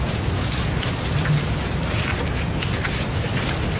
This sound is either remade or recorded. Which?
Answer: recorded